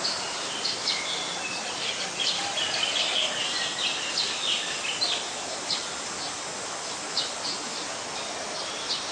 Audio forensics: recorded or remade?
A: recorded